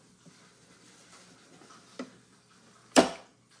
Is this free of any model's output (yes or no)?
yes